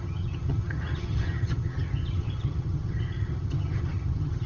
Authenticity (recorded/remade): remade